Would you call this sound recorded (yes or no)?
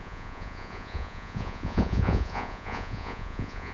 no